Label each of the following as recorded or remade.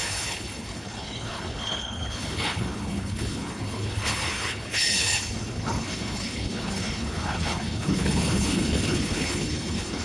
remade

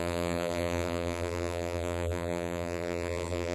remade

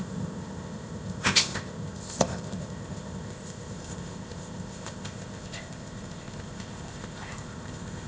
remade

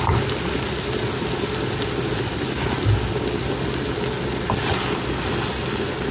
recorded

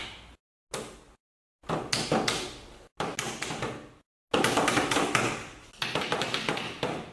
recorded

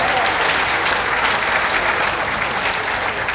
recorded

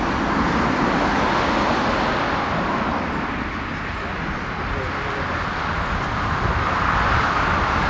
recorded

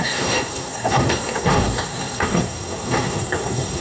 remade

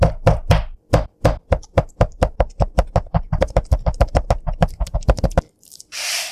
recorded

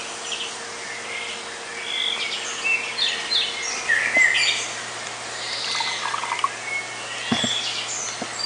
recorded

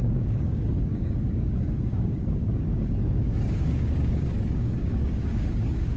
remade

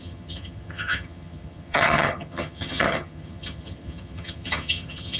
remade